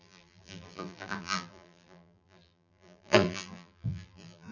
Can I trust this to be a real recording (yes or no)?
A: no